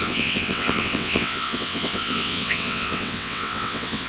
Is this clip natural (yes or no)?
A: no